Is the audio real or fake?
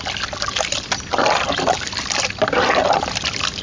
fake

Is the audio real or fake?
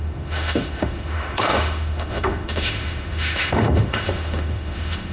fake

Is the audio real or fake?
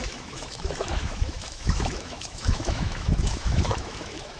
fake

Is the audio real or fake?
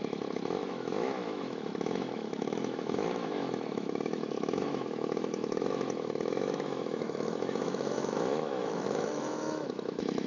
fake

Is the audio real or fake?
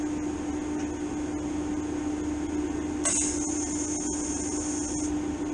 real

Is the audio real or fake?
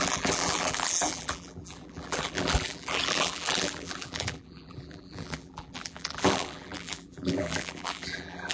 fake